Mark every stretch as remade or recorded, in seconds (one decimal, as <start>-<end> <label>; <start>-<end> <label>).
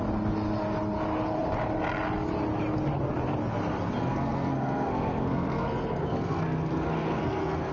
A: 0.0-4.0 recorded; 4.0-7.7 remade